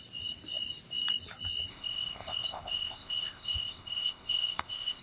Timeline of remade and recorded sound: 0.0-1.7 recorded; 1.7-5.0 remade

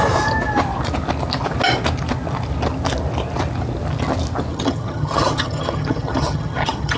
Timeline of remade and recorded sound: 0.0-4.5 recorded; 4.5-7.0 remade

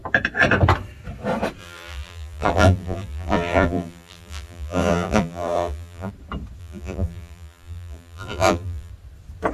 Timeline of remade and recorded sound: 0.0-1.6 recorded; 1.6-6.1 remade; 6.1-6.6 recorded; 6.6-8.9 remade; 8.9-9.5 recorded

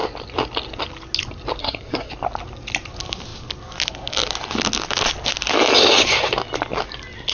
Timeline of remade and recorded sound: 0.0-1.6 recorded; 1.6-2.1 remade; 2.1-7.3 recorded

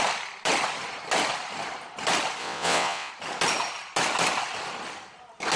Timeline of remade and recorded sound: 0.0-2.4 recorded; 2.4-3.1 remade; 3.1-5.6 recorded

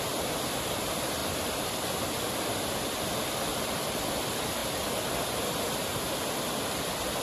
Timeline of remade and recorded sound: 0.0-7.2 recorded

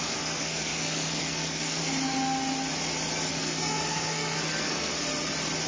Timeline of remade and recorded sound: 0.0-1.8 remade; 1.8-3.3 recorded; 3.3-4.9 remade; 4.9-5.7 recorded